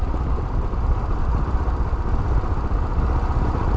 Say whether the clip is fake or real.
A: real